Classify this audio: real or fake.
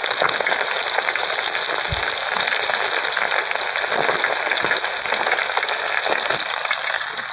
real